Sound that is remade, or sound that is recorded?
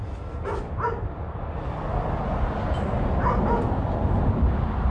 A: recorded